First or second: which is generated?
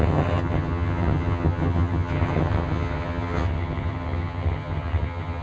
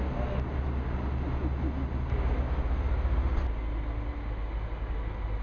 first